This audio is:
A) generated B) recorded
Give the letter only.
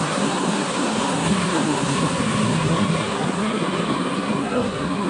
A